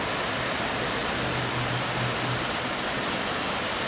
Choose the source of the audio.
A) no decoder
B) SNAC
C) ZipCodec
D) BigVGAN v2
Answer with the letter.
A